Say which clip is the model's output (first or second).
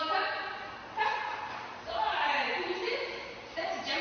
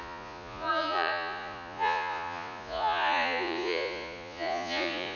second